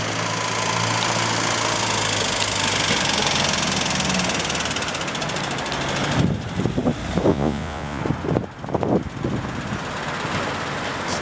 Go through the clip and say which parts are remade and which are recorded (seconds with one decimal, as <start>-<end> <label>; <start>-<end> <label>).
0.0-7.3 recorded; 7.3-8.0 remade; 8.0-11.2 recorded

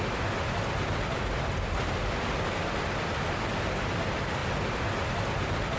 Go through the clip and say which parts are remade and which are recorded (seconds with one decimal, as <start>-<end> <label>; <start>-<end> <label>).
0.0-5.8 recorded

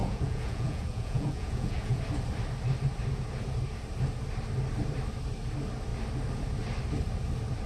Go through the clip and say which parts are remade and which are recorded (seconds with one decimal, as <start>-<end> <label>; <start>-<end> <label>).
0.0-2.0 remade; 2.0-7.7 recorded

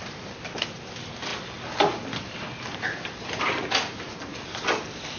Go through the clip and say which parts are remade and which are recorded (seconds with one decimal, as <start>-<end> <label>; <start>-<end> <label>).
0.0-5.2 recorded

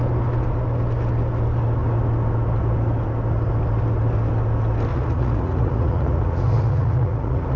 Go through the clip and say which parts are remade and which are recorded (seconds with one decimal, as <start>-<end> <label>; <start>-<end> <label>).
0.0-4.9 recorded; 4.9-7.6 remade

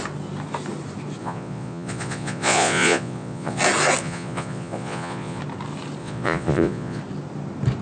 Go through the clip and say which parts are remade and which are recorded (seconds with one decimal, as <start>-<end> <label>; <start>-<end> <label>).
0.0-1.2 recorded; 1.2-3.6 remade; 3.6-4.0 recorded; 4.0-5.4 remade; 5.4-6.0 recorded; 6.0-7.0 remade; 7.0-7.8 recorded